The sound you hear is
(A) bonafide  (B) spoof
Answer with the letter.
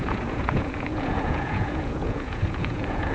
B